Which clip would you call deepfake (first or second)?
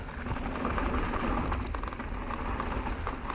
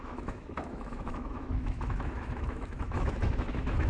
second